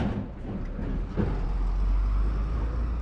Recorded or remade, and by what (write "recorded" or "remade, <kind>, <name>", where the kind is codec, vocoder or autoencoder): recorded